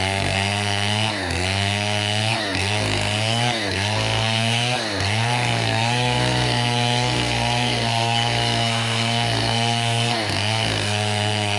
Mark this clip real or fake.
fake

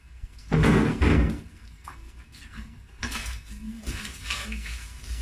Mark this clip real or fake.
fake